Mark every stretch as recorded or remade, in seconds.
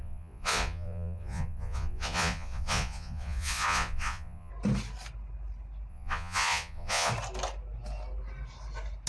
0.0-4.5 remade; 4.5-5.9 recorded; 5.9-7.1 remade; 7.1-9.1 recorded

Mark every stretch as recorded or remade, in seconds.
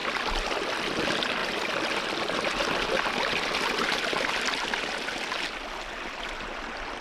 0.0-7.0 recorded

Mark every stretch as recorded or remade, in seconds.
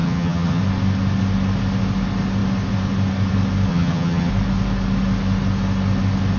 0.0-0.6 remade; 0.6-3.7 recorded; 3.7-4.3 remade; 4.3-6.4 recorded